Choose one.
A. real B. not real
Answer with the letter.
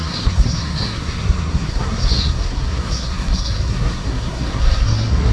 B